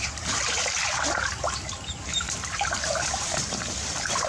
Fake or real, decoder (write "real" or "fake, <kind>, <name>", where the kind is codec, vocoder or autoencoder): real